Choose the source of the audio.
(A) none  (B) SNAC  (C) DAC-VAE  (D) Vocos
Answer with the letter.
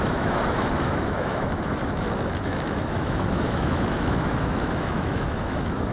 C